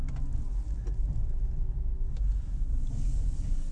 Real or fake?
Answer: real